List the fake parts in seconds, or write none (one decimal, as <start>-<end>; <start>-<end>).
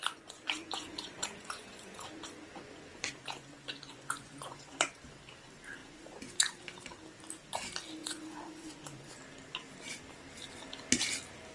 0.0-5.0; 5.8-6.6; 8.0-9.1